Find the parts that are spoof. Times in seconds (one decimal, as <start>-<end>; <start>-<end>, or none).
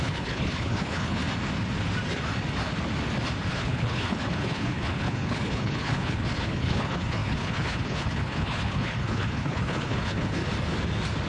0.0-1.2; 3.5-10.4